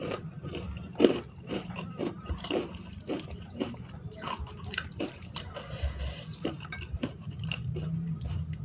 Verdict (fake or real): fake